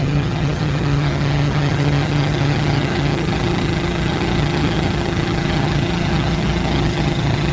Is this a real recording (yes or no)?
no